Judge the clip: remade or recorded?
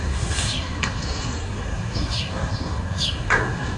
remade